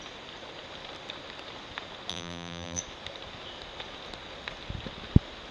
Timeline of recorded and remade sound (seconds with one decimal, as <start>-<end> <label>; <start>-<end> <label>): 0.0-2.1 recorded; 2.1-2.8 remade; 2.8-5.5 recorded